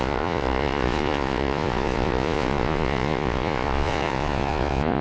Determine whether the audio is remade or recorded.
remade